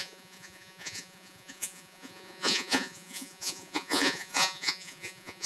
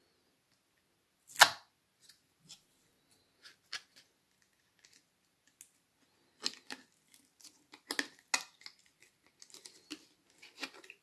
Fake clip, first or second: first